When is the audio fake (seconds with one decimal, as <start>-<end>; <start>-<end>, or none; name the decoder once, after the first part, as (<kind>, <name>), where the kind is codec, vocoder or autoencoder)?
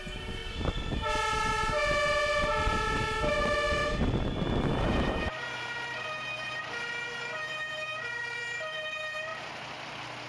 0.0-0.4 (vocoder, BigVGAN v2); 3.3-3.8; 4.7-9.3